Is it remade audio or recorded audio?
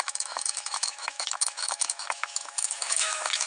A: remade